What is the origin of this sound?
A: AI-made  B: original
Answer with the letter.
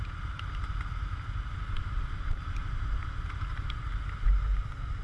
B